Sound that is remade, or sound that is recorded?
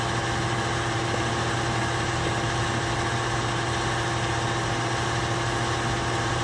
recorded